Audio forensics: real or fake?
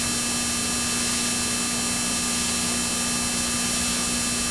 real